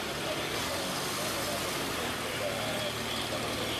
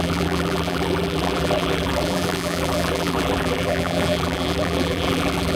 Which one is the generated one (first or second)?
second